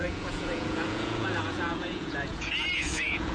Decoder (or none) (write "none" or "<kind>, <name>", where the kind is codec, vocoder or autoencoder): vocoder, Vocos